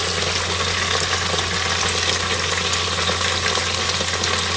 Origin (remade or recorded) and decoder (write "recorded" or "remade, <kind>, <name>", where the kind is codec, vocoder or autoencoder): recorded